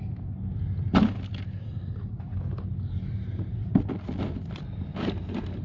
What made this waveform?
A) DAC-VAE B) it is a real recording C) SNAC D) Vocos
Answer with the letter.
B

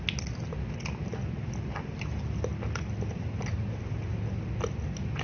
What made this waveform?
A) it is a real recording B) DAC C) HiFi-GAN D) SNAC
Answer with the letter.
A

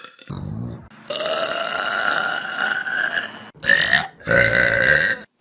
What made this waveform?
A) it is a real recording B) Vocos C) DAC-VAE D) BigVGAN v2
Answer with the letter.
A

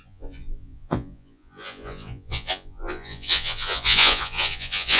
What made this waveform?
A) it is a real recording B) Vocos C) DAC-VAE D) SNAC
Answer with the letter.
B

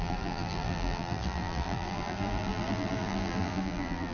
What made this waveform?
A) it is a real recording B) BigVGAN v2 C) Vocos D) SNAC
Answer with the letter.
B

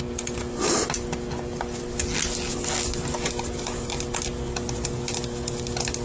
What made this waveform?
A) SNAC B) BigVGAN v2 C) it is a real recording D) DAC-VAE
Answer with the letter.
C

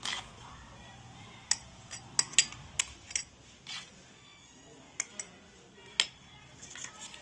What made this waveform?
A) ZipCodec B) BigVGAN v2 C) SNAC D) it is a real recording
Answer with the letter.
D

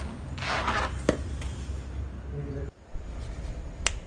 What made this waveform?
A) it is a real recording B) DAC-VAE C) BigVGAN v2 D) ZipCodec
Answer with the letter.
A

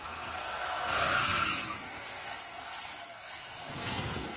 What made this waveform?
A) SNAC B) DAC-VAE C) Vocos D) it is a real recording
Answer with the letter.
A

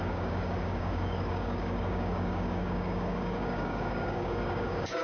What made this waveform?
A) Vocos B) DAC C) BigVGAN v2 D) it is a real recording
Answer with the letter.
B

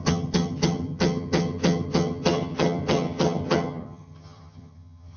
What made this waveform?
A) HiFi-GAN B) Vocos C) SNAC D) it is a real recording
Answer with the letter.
A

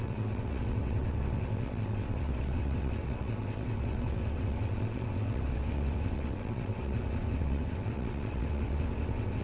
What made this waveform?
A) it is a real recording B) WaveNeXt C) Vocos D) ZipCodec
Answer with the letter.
B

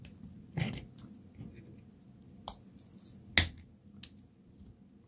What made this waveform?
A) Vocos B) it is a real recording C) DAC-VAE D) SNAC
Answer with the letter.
B